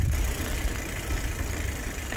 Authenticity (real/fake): real